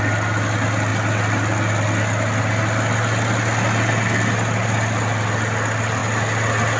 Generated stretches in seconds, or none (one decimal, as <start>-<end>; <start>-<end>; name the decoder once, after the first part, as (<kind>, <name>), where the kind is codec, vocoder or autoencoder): none